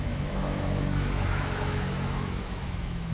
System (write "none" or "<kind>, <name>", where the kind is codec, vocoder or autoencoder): autoencoder, DAC-VAE